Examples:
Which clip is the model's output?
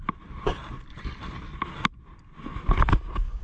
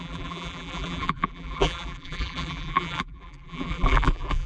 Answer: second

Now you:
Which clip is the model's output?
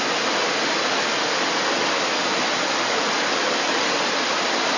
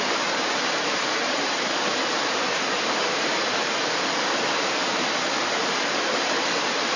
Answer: second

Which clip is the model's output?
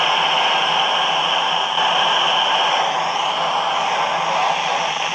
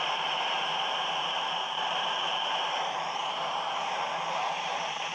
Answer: second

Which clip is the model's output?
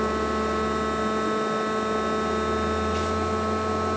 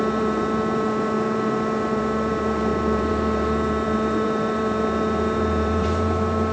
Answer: second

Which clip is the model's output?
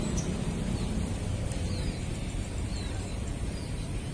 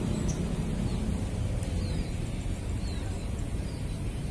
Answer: first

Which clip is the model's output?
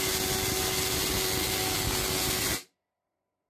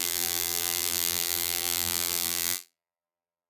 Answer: second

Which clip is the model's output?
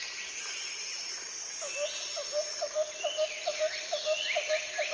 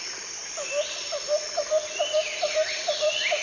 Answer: second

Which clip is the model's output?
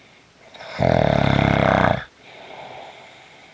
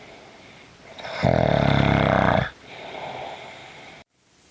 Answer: second